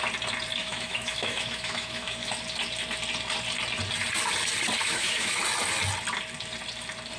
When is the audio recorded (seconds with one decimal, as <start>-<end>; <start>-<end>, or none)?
0.0-0.6; 2.3-4.8; 5.4-7.2